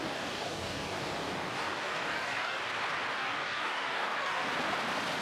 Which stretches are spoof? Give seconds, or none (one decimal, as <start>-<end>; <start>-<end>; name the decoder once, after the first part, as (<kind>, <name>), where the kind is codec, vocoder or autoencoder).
0.0-2.6 (codec, DAC); 3.1-4.5